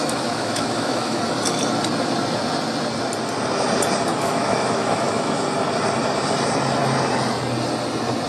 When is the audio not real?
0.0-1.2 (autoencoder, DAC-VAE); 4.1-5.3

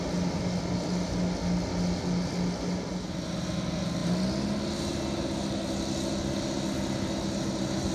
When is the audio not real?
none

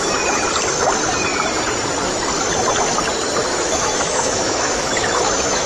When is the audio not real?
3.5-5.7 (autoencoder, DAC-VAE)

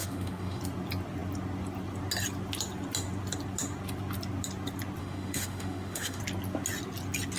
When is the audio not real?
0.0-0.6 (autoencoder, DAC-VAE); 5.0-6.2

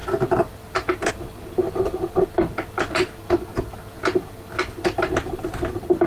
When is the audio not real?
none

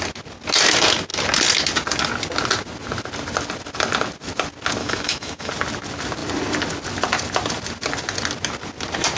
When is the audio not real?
4.8-5.5 (autoencoder, DAC-VAE)

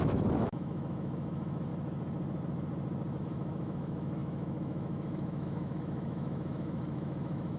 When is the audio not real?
0.0-1.7 (autoencoder, DAC-VAE); 3.2-7.6